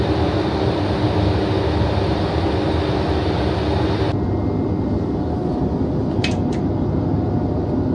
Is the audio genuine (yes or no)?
yes